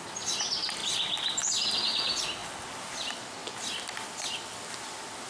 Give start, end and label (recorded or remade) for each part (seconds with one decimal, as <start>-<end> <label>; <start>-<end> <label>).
0.0-5.3 recorded